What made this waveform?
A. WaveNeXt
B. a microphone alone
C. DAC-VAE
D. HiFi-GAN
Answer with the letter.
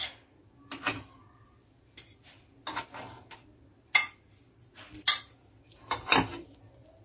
B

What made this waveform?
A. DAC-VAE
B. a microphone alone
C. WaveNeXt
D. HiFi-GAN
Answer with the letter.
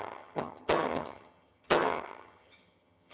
D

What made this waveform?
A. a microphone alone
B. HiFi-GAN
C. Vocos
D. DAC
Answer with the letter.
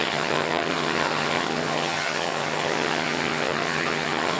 B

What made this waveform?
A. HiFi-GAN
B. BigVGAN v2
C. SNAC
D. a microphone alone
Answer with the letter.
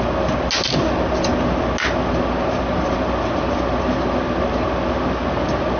D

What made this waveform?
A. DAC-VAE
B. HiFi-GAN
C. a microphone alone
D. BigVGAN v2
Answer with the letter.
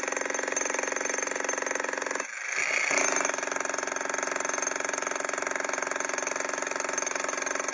C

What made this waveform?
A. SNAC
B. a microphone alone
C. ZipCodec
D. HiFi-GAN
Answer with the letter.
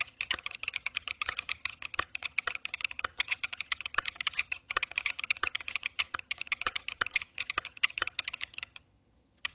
D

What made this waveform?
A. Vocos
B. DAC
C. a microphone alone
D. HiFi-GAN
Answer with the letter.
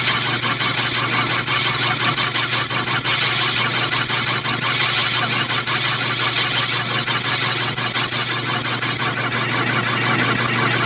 C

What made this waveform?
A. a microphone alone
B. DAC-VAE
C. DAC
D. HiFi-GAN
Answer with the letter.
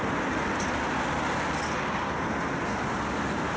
A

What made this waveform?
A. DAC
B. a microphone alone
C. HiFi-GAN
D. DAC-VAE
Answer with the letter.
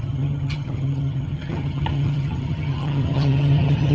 C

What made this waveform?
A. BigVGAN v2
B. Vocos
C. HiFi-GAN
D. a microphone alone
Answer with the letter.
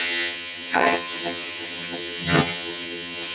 C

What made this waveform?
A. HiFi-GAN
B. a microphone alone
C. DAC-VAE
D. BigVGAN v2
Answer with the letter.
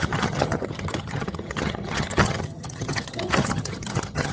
A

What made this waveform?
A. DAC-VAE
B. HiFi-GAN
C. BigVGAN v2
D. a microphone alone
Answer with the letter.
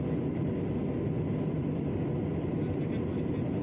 D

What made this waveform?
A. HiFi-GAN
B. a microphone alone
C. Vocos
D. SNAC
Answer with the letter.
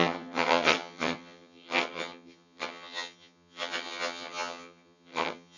A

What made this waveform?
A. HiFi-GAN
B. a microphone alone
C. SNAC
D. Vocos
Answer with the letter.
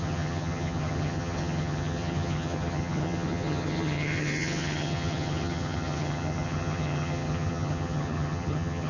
A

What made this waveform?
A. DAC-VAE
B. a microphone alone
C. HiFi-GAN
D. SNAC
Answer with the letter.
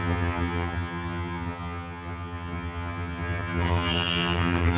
C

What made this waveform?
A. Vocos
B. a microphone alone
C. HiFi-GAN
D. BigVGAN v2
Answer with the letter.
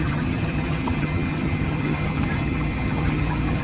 C